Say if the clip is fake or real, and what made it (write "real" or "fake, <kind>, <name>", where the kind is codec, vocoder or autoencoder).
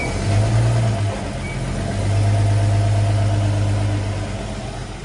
real